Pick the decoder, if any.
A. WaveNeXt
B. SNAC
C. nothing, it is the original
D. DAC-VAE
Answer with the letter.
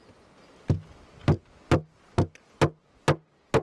C